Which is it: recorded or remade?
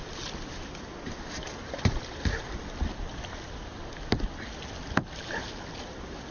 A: recorded